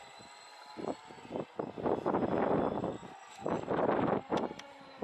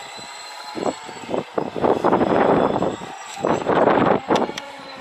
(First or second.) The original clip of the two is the first